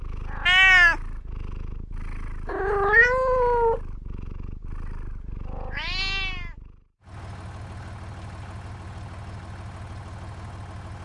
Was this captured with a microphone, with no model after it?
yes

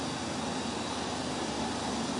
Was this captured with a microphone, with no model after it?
yes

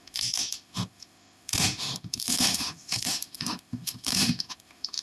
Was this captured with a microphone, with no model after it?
no